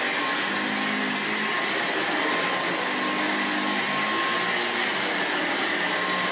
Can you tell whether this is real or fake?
real